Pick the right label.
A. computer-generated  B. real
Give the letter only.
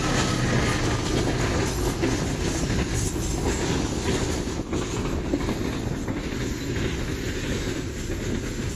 B